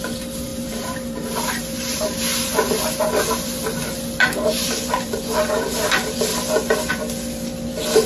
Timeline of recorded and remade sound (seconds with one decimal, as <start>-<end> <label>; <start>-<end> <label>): 0.0-6.3 remade; 6.3-6.9 recorded; 6.9-8.1 remade